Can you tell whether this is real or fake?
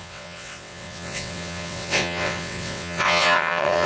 fake